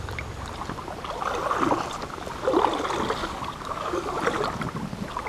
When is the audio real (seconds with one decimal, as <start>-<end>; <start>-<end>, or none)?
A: 0.0-3.2; 4.2-5.3